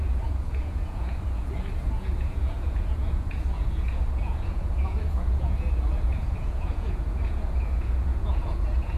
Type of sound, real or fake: fake